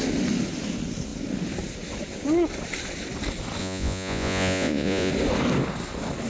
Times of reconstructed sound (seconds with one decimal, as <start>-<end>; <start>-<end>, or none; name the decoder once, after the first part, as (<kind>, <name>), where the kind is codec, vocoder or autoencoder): 3.6-5.1 (vocoder, Vocos)